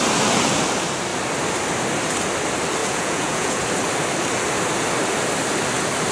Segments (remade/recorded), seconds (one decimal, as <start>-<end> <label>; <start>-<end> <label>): 0.0-2.8 recorded; 2.8-3.6 remade; 3.6-6.1 recorded